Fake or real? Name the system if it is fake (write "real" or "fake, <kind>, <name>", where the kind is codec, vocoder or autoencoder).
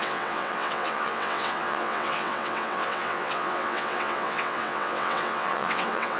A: fake, vocoder, WaveNeXt